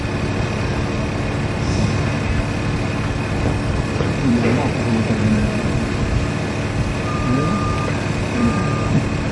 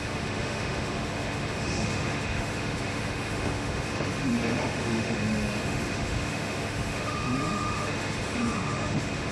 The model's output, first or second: second